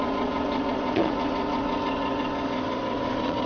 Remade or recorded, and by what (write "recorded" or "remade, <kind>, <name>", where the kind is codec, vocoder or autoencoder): remade, vocoder, Vocos